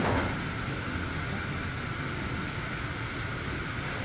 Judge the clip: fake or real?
real